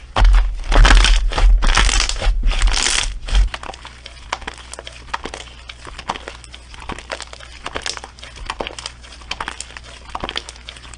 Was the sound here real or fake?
real